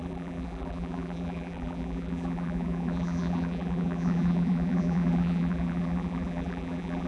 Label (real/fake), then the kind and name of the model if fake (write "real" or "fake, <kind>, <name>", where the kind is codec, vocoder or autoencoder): fake, vocoder, BigVGAN v2